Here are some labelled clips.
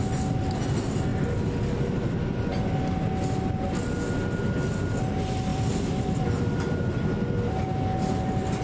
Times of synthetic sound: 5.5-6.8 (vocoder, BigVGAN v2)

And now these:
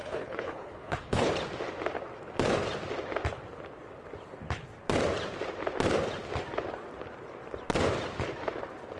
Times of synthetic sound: 0.0-1.3 (codec, HILCodec)

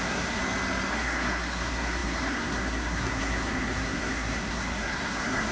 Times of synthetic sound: 0.0-0.4 (codec, SNAC); 0.9-5.5

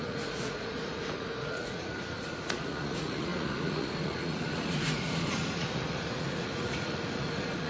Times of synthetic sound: 0.0-7.7 (vocoder, Vocos)

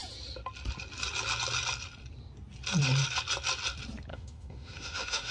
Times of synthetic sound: 4.1-5.3 (autoencoder, DAC-VAE)

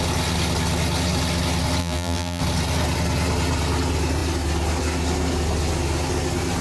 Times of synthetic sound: 1.8-2.4 (vocoder, BigVGAN v2)